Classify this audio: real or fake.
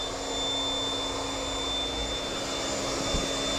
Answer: real